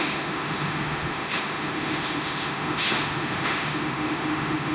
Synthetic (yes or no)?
yes